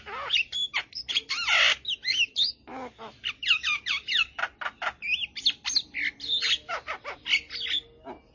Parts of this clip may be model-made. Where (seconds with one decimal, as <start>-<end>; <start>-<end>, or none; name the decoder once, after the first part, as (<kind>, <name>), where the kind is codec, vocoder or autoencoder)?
none